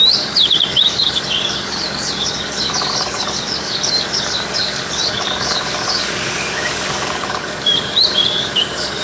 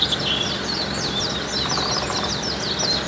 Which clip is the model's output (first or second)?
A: first